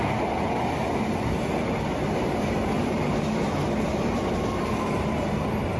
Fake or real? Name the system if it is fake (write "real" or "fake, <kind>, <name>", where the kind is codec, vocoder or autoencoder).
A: real